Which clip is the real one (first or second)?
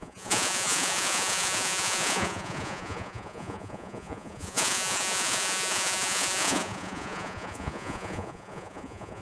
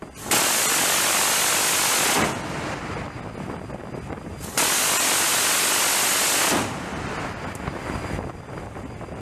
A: second